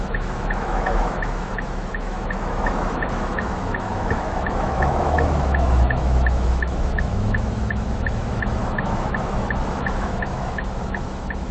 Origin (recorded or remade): remade